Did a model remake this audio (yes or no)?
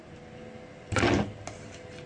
no